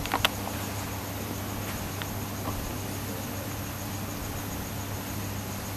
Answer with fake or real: real